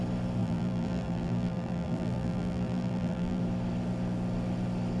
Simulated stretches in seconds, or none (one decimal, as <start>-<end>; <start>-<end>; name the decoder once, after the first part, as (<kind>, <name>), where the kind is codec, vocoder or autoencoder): 0.4-3.4 (vocoder, BigVGAN v2)